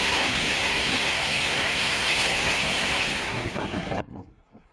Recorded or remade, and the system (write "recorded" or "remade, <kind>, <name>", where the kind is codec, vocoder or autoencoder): remade, codec, SNAC